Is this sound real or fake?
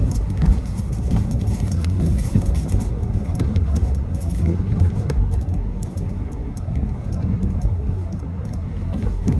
fake